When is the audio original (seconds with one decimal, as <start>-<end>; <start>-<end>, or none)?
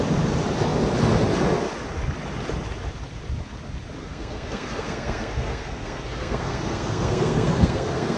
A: 0.0-4.0